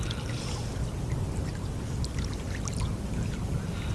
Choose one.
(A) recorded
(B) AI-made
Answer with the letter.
A